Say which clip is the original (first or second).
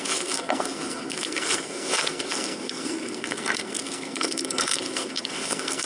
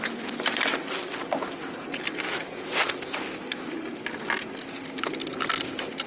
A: second